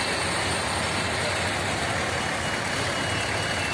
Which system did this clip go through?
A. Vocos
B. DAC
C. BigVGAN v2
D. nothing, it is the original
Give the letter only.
D